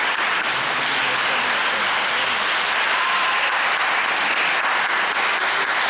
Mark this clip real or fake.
real